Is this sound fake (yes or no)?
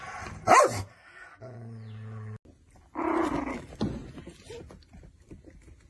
no